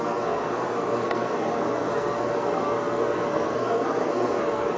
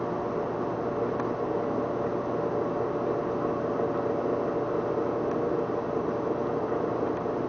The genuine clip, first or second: second